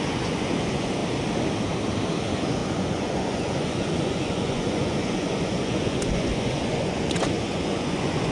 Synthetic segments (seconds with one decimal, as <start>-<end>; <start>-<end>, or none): 0.0-1.0; 2.2-8.3